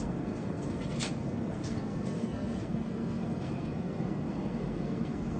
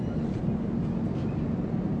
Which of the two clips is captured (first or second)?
second